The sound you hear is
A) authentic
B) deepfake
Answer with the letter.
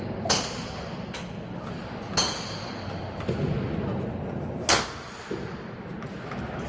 A